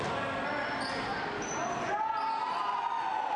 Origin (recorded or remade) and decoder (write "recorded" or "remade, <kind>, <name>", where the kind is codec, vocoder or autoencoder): recorded